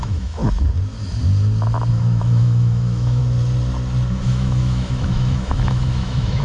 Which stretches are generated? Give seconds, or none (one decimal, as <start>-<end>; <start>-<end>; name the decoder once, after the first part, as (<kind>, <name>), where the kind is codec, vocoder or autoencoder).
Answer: 0.0-0.4 (autoencoder, DAC-VAE); 1.9-3.2; 4.1-6.4